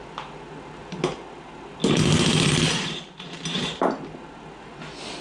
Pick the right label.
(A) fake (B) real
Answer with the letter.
B